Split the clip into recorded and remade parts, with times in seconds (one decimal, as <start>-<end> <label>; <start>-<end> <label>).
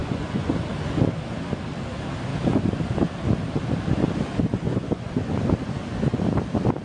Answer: 0.0-0.5 remade; 0.5-4.5 recorded; 4.5-5.3 remade; 5.3-6.8 recorded